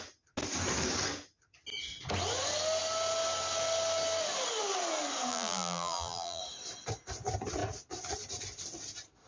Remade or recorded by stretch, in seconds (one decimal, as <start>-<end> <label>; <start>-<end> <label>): 0.0-5.3 recorded; 5.3-6.4 remade; 6.4-9.3 recorded